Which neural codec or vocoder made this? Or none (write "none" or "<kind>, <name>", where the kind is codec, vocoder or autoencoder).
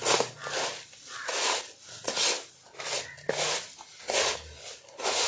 none